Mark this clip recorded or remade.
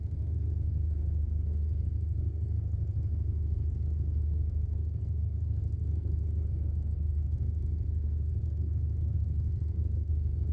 remade